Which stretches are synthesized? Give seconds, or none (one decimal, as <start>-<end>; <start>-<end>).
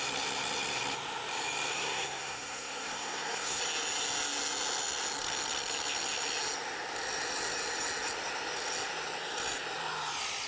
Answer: 1.7-3.6